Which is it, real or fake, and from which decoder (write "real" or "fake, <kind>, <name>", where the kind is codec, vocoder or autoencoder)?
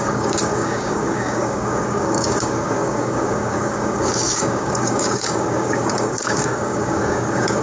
fake, codec, DAC